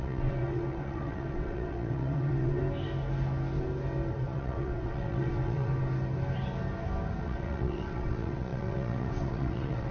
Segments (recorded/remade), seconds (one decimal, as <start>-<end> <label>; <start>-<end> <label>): 0.0-2.6 remade; 2.6-4.1 recorded; 4.1-5.7 remade; 5.7-7.2 recorded; 7.2-9.9 remade